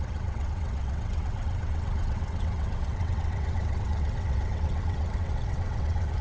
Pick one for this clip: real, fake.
fake